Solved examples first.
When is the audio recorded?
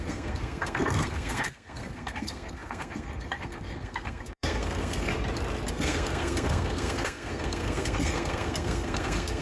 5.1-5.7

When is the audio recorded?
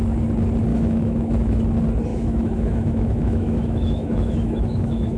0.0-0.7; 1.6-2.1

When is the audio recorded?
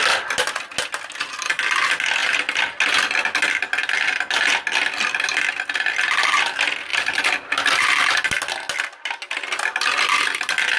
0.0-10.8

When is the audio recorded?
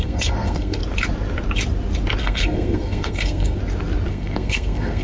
0.8-2.2; 3.6-4.1